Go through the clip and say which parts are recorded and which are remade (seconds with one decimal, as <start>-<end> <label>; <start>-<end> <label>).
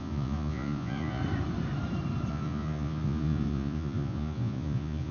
0.0-1.2 remade; 1.2-2.3 recorded; 2.3-5.1 remade